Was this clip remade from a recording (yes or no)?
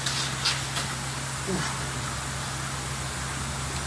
no